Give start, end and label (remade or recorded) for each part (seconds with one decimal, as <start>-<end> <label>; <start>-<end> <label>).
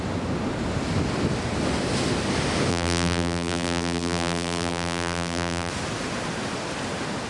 0.0-2.7 recorded; 2.7-5.7 remade; 5.7-7.3 recorded